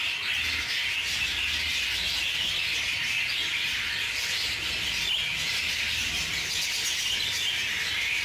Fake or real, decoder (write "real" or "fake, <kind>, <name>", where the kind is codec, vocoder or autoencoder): real